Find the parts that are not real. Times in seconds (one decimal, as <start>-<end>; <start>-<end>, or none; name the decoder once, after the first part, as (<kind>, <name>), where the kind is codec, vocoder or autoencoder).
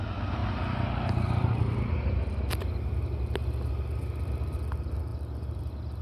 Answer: none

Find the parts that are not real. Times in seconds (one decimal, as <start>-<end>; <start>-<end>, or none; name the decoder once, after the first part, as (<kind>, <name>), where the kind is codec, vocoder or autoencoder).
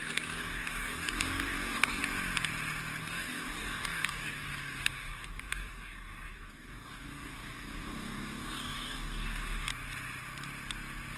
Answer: 0.0-2.0 (codec, DAC); 3.0-9.7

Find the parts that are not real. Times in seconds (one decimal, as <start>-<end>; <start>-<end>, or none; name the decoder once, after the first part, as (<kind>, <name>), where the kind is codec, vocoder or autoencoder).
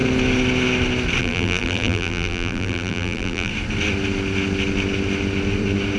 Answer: 1.2-3.5 (vocoder, BigVGAN v2)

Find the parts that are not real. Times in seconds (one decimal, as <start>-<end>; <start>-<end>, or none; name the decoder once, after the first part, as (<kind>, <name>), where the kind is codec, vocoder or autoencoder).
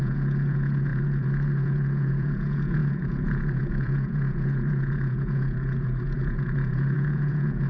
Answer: 0.0-7.7 (vocoder, Vocos)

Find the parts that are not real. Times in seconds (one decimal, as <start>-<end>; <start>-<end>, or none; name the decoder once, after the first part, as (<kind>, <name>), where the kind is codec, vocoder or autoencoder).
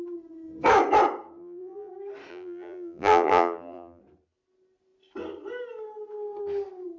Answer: 1.4-1.9 (vocoder, BigVGAN v2); 2.3-4.0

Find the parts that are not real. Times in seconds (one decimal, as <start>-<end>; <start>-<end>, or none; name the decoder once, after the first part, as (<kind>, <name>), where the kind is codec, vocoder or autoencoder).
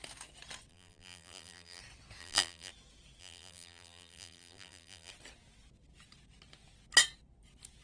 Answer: 0.7-1.8 (vocoder, BigVGAN v2); 2.2-2.7; 3.2-5.1